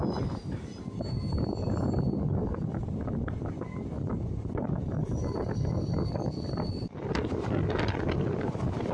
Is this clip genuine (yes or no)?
yes